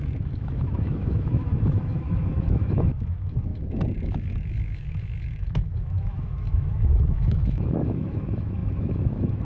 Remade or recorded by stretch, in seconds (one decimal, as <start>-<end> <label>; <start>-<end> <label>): 0.0-9.4 remade